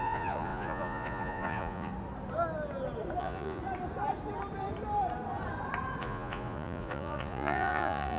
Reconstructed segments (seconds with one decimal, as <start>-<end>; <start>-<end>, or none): 0.0-1.9; 3.2-3.6; 6.0-8.2